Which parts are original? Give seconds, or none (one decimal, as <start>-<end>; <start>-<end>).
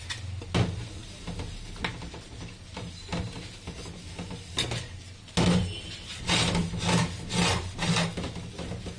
0.0-9.0